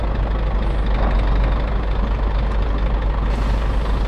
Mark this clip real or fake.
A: real